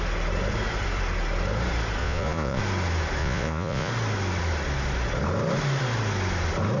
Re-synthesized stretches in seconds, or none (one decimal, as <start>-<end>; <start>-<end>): 2.0-2.6; 3.2-3.9